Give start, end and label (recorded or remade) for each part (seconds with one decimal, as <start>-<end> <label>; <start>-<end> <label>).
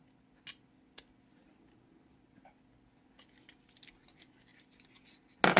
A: 0.0-5.6 recorded